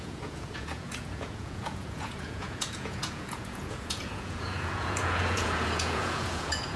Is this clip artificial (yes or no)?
yes